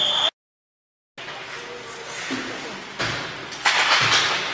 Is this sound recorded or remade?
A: recorded